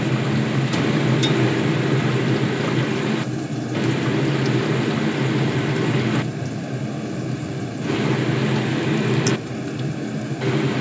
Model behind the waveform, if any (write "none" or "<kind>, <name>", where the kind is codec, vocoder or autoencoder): none